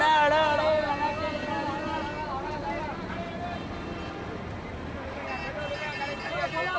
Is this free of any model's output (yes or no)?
yes